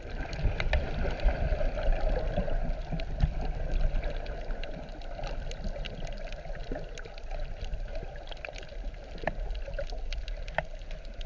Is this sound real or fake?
real